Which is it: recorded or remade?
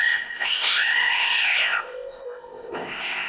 remade